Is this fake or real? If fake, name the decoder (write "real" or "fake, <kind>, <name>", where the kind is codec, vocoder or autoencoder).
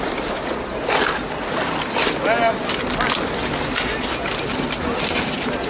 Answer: real